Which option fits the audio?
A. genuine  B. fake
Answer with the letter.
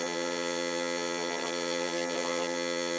B